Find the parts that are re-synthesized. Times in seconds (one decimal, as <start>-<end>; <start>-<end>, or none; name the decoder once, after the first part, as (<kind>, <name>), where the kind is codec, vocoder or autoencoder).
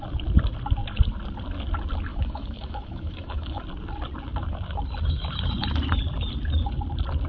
2.1-3.6 (autoencoder, DAC-VAE)